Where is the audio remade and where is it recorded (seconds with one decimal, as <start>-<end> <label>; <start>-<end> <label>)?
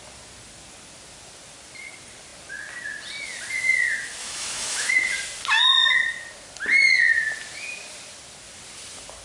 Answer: 0.0-4.2 recorded; 4.2-4.9 remade; 4.9-9.2 recorded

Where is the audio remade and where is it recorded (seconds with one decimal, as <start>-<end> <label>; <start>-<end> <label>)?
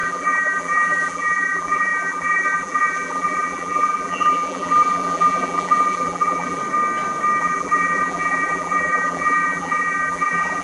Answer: 0.0-6.6 remade; 6.6-7.4 recorded; 7.4-10.6 remade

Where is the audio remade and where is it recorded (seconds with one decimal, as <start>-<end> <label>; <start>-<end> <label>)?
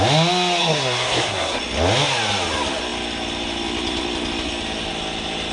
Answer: 0.0-0.6 recorded; 0.6-1.6 remade; 1.6-5.5 recorded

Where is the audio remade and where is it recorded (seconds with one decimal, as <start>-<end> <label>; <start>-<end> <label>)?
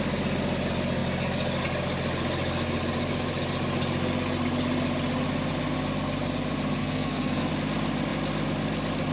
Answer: 0.0-6.8 recorded; 6.8-7.5 remade; 7.5-9.1 recorded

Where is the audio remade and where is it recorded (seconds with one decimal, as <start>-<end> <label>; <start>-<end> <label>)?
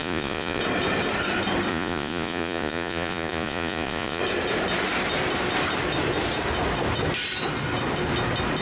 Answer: 0.0-0.6 remade; 0.6-1.7 recorded; 1.7-4.2 remade; 4.2-8.6 recorded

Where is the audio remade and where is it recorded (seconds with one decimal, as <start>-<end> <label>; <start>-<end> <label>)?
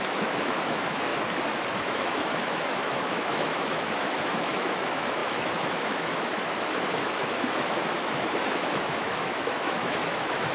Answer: 0.0-1.1 remade; 1.1-1.7 recorded; 1.7-10.5 remade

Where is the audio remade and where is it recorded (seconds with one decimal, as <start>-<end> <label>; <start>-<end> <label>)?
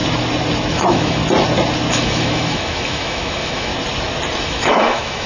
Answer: 0.0-0.7 recorded; 0.7-1.2 remade; 1.2-1.9 recorded; 1.9-3.7 remade; 3.7-4.4 recorded; 4.4-5.3 remade